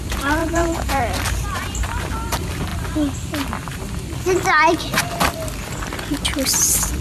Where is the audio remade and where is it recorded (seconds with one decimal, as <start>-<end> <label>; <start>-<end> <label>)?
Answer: 0.0-0.4 recorded; 0.4-1.0 remade; 1.0-7.0 recorded